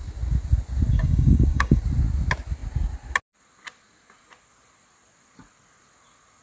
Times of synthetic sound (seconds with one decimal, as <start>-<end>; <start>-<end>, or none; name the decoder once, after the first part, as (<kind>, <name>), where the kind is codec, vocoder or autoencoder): 0.9-1.8 (codec, DAC)